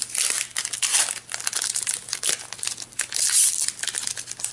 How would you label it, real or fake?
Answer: real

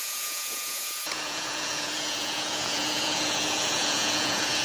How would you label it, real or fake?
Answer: fake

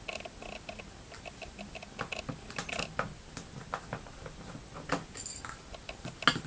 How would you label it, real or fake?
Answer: real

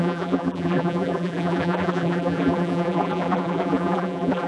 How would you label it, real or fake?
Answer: fake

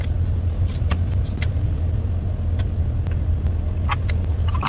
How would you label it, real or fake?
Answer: real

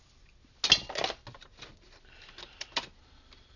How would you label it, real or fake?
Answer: real